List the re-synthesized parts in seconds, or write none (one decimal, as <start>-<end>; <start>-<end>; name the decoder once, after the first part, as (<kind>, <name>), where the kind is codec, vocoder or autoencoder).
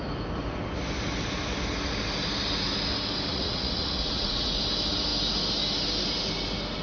3.3-4.6 (vocoder, Vocos)